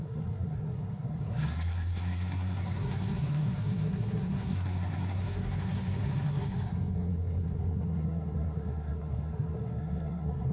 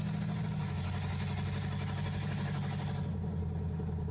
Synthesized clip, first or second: first